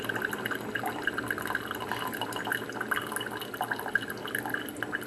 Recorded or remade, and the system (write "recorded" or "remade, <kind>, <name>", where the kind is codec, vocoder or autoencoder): recorded